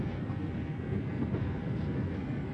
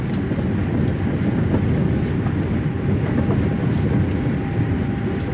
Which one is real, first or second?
second